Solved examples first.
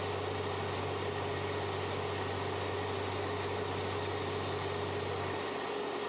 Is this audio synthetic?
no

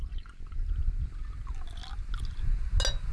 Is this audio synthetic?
no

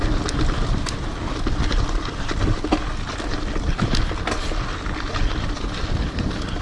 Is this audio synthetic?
no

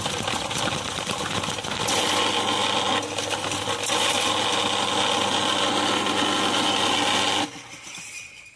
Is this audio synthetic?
no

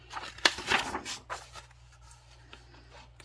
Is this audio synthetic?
yes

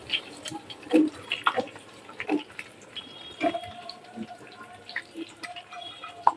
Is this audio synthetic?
yes